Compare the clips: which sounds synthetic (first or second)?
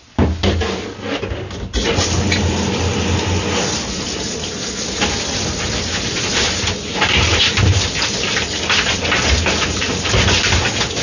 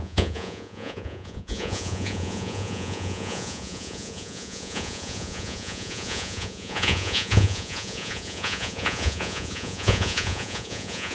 second